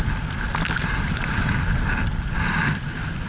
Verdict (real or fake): real